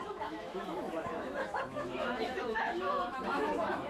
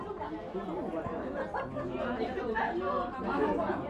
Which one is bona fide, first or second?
second